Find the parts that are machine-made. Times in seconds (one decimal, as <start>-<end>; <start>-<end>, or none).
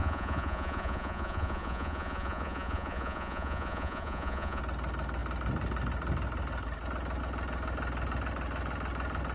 0.0-4.6